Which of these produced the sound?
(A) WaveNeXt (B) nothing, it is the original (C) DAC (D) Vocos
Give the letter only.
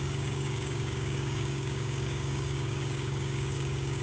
C